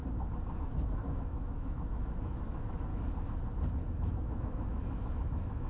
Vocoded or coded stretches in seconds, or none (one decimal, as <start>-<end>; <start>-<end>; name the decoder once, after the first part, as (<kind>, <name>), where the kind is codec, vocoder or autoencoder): 0.6-2.9 (autoencoder, DAC-VAE); 3.9-5.7